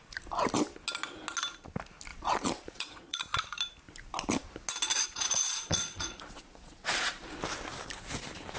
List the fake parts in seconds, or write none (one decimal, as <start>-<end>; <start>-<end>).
2.1-3.2; 4.9-7.2